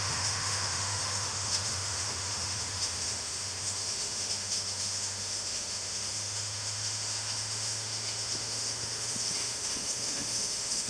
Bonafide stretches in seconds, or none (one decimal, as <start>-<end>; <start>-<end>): none

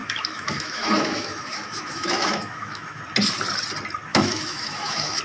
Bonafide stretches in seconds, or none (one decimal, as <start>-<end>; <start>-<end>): 3.0-4.1

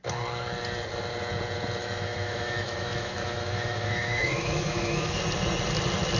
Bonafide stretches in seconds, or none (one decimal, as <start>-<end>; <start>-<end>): 0.0-1.8; 5.2-6.2

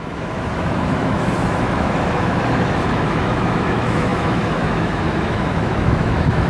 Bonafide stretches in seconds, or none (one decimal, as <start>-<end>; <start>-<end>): none